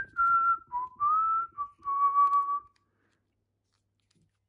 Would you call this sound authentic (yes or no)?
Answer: yes